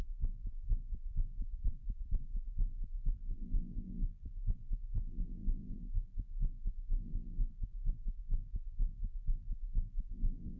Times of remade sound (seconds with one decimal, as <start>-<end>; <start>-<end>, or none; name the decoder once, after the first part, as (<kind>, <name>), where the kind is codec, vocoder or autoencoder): 0.0-1.5 (vocoder, BigVGAN v2); 2.3-10.6